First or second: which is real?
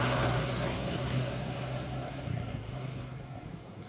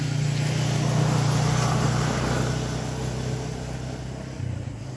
second